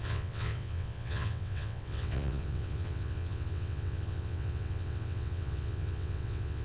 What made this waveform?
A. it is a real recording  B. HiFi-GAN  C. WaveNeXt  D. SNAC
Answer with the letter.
C